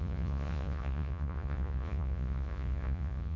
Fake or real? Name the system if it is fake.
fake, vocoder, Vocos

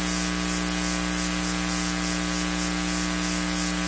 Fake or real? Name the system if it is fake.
real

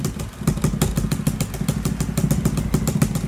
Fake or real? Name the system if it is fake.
real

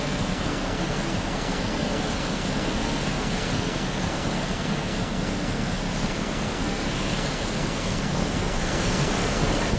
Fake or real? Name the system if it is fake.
fake, codec, SNAC